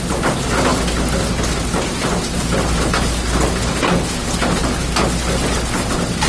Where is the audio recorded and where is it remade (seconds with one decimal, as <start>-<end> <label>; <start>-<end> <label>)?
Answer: 0.0-6.3 recorded